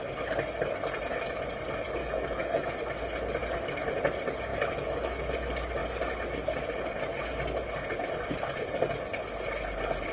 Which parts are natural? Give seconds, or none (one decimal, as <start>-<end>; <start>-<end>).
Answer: 0.0-2.0; 2.7-4.5; 5.3-10.1